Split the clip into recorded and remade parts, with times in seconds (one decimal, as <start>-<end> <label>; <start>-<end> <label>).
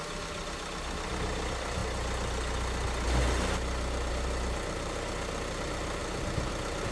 0.0-6.9 recorded